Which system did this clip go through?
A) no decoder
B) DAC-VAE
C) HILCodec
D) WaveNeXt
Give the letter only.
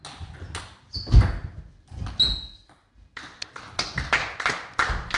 A